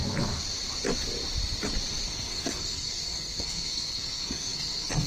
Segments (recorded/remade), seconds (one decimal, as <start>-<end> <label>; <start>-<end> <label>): 0.0-2.0 recorded; 2.0-5.1 remade